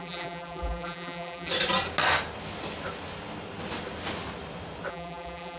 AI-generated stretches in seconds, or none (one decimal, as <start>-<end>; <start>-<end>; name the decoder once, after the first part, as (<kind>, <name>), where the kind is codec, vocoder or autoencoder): 0.0-1.5 (vocoder, BigVGAN v2); 4.9-5.6